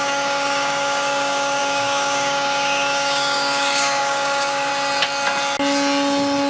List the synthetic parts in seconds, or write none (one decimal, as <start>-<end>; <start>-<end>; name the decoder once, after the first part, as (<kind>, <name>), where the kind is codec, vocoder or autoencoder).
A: 0.0-4.7 (codec, DAC)